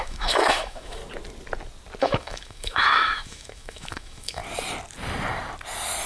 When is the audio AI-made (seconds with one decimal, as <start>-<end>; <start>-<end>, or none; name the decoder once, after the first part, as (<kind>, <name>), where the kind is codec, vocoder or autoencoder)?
0.0-1.0 (autoencoder, DAC-VAE); 2.0-4.4